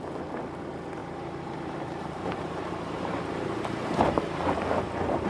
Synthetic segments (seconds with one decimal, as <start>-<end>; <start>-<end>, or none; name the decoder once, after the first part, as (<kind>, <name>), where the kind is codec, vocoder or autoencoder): 1.0-4.2 (vocoder, BigVGAN v2)